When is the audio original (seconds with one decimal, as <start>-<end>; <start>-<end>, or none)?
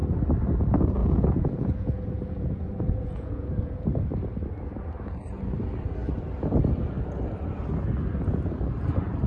0.0-1.0; 3.9-9.3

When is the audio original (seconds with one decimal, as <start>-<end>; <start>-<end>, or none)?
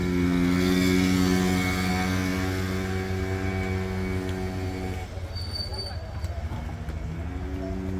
0.0-8.0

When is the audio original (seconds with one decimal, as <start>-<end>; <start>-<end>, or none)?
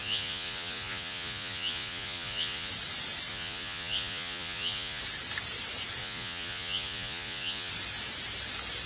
2.7-3.3; 5.0-6.0; 7.7-8.9